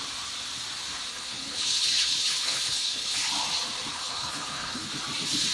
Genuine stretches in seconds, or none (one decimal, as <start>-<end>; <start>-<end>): 0.0-1.1; 3.3-3.9; 4.9-5.5